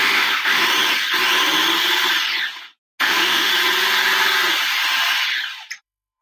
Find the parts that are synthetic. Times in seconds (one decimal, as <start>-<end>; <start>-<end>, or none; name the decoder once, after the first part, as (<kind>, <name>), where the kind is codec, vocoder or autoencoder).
0.0-0.6 (autoencoder, DAC-VAE); 3.0-3.5; 5.8-6.2